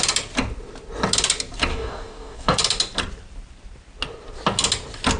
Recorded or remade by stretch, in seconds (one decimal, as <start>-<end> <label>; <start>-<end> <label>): 0.0-1.7 recorded; 1.7-2.6 remade; 2.6-5.2 recorded